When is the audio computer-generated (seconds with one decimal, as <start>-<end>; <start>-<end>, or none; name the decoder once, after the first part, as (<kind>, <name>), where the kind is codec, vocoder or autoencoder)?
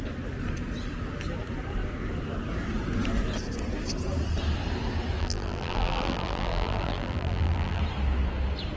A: 5.2-7.8 (vocoder, BigVGAN v2)